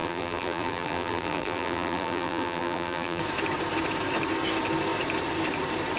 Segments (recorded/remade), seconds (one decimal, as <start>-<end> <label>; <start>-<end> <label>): 0.0-3.2 remade; 3.2-6.0 recorded